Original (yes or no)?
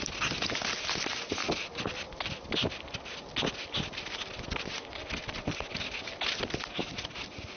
yes